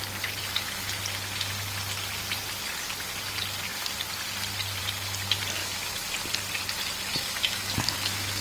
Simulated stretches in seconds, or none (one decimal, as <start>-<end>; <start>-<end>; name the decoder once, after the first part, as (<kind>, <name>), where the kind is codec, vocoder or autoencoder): 5.6-6.1 (autoencoder, DAC-VAE); 7.1-8.4